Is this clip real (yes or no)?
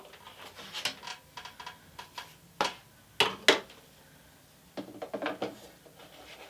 yes